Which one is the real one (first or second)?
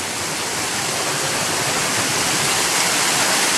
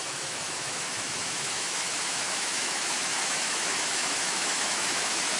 first